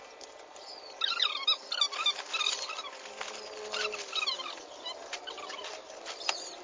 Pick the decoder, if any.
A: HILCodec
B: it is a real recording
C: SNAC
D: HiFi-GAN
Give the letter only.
B